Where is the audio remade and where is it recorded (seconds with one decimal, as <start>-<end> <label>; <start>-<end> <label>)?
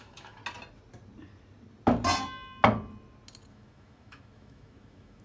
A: 0.0-0.4 remade; 0.4-3.5 recorded; 3.5-5.2 remade